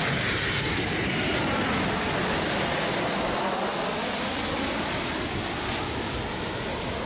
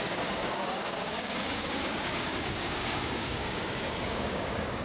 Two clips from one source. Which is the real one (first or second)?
first